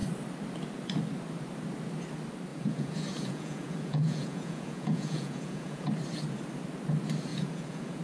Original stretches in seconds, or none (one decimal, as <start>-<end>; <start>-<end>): 0.0-2.5; 5.9-7.3